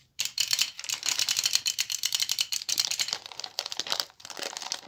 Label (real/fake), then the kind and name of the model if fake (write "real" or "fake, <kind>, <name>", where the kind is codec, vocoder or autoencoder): fake, vocoder, BigVGAN v2